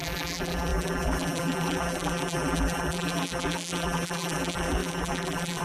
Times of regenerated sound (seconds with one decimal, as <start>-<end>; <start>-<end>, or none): 0.0-5.6